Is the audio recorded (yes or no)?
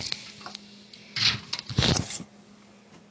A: yes